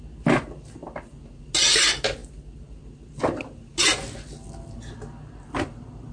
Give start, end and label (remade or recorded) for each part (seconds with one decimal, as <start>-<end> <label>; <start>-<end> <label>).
0.0-6.1 recorded